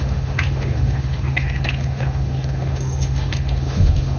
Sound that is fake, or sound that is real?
fake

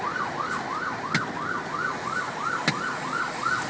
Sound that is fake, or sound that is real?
real